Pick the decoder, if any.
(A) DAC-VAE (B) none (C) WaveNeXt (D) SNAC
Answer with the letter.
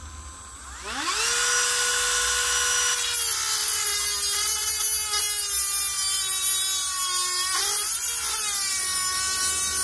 B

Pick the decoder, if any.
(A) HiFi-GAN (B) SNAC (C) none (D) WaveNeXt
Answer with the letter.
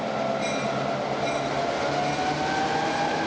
C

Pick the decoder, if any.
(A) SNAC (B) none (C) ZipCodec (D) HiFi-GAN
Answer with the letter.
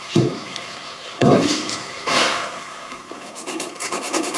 A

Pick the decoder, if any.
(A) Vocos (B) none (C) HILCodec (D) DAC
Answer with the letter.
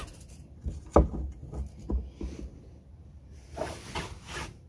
B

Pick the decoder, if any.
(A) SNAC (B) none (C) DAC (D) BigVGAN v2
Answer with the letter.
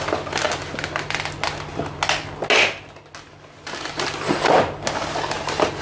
B